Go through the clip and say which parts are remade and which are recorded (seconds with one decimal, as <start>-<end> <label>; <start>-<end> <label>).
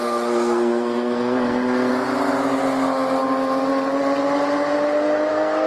0.0-1.9 remade; 1.9-5.3 recorded; 5.3-5.7 remade